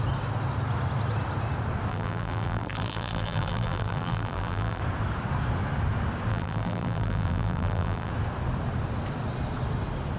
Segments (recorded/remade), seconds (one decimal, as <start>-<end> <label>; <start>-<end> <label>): 0.0-1.9 recorded; 1.9-4.8 remade; 4.8-6.3 recorded; 6.3-8.1 remade; 8.1-10.2 recorded